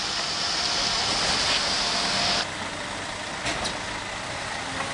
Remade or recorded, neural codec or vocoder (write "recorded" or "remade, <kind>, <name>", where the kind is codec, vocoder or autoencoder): recorded